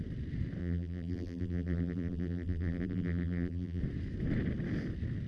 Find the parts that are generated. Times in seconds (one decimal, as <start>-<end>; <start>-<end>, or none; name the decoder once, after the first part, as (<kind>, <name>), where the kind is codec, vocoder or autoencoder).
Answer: 0.6-3.8 (vocoder, BigVGAN v2)